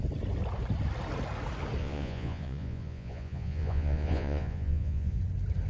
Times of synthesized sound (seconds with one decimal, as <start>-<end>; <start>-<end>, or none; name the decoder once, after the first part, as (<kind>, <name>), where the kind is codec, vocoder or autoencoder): 1.8-5.2 (vocoder, Vocos)